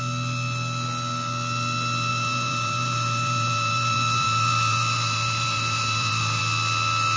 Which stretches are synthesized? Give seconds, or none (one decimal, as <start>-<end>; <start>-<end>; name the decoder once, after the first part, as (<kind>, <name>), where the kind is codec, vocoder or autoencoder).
2.1-6.4 (vocoder, BigVGAN v2)